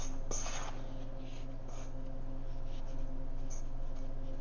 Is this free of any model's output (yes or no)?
yes